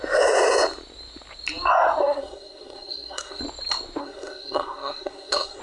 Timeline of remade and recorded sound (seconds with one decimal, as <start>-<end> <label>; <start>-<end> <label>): 0.0-2.0 recorded; 2.0-3.4 remade; 3.4-4.0 recorded; 4.0-5.6 remade